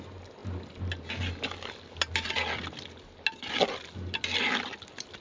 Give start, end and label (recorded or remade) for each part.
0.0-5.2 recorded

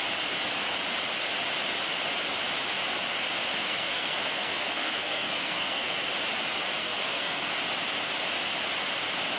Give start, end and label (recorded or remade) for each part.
0.0-3.6 recorded; 3.6-6.1 remade; 6.1-6.8 recorded; 6.8-7.5 remade; 7.5-9.4 recorded

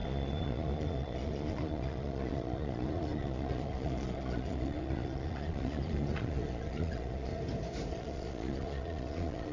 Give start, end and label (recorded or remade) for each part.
0.0-7.3 remade; 7.3-7.9 recorded; 7.9-9.5 remade

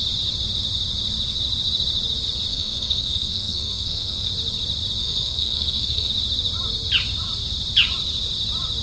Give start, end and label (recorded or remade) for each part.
0.0-2.5 recorded; 2.5-4.3 remade; 4.3-5.0 recorded; 5.0-6.1 remade; 6.1-8.8 recorded

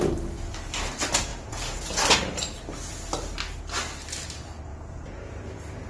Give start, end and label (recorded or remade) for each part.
0.0-1.3 recorded; 1.3-2.0 remade; 2.0-4.7 recorded; 4.7-5.3 remade; 5.3-5.9 recorded

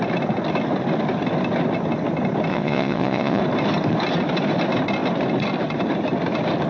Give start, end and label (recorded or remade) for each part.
0.0-2.5 recorded; 2.5-3.4 remade; 3.4-6.7 recorded